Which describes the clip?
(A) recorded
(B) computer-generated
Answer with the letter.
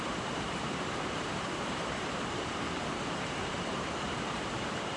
B